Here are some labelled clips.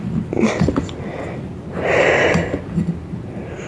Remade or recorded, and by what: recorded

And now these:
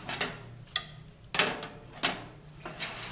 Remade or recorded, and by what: recorded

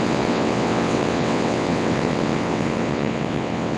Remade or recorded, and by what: remade, vocoder, WaveNeXt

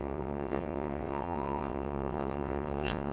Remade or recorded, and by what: remade, vocoder, WaveNeXt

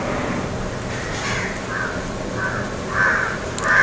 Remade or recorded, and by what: recorded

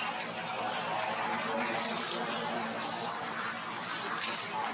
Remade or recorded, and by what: recorded